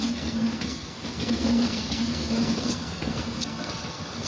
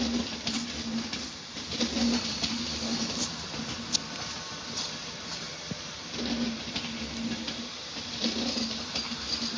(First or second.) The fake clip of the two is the first